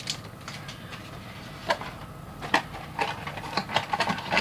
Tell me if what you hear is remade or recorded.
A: recorded